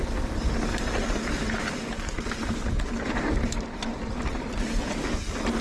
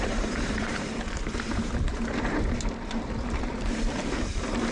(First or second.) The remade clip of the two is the second